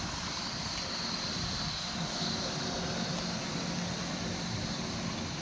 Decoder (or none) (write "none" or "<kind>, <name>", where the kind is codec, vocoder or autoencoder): none